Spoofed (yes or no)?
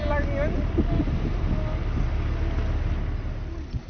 no